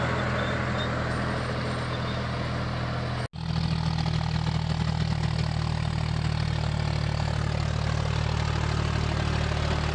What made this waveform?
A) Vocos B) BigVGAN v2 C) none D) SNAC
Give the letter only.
C